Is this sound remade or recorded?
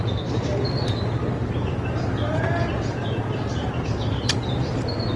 remade